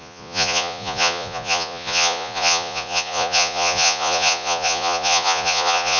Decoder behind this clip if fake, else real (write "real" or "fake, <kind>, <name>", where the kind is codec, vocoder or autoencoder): fake, vocoder, Vocos